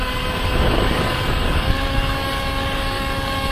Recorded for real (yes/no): no